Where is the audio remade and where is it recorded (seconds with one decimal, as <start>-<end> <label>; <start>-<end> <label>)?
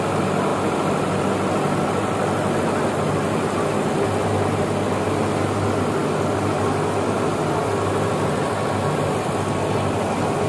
0.0-10.5 recorded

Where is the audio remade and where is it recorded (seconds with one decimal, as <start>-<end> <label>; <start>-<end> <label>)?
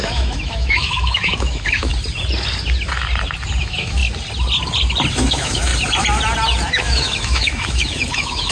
0.0-1.9 remade; 1.9-3.6 recorded; 3.6-4.0 remade; 4.0-5.1 recorded; 5.1-5.7 remade; 5.7-6.7 recorded; 6.7-8.5 remade